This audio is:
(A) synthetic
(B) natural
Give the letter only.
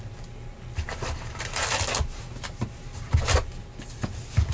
B